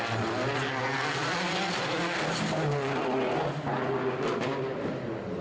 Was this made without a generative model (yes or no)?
yes